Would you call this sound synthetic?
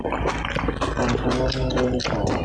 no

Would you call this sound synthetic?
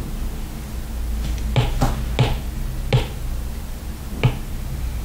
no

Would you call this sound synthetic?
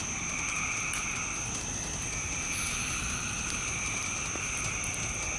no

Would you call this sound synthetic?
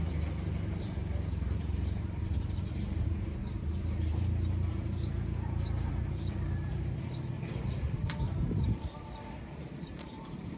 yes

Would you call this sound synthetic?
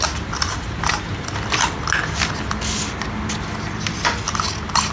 no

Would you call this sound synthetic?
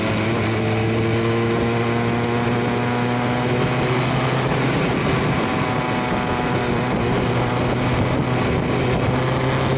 no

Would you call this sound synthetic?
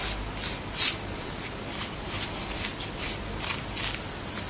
no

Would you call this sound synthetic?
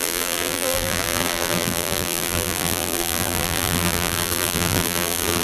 yes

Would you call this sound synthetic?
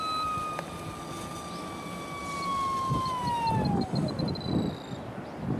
no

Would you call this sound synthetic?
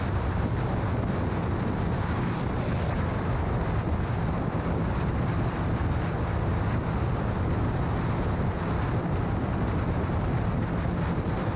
no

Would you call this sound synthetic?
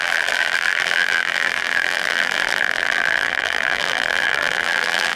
yes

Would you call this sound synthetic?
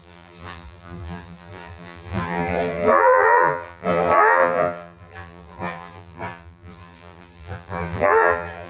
yes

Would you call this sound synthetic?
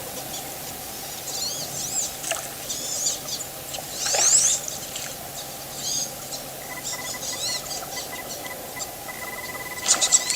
no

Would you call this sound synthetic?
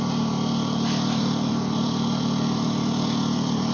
yes